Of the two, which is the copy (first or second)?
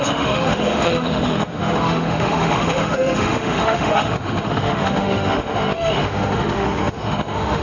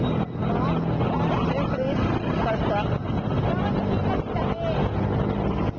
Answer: first